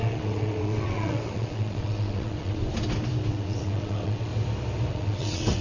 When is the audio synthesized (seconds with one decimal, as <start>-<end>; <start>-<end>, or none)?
0.0-2.6; 3.3-4.3; 4.9-5.6